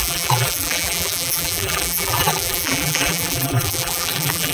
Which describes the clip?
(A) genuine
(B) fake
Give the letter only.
B